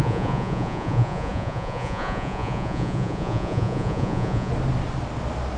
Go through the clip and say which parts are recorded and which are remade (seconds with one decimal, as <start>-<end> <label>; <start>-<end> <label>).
0.0-4.5 remade; 4.5-5.6 recorded